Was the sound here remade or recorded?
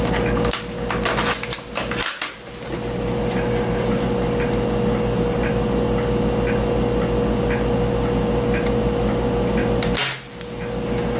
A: recorded